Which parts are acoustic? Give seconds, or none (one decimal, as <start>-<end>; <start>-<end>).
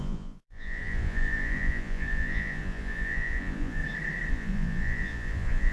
3.8-4.3